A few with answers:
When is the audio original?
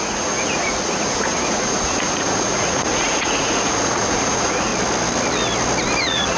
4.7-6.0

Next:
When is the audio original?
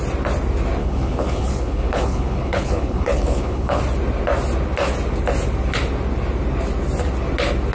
0.0-0.8; 3.8-7.7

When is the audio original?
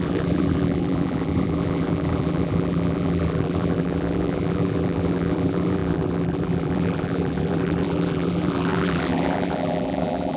none